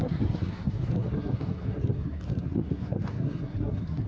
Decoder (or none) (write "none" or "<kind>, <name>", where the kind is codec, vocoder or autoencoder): codec, SNAC